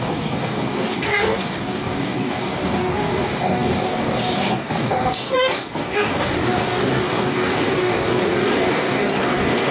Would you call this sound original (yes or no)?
no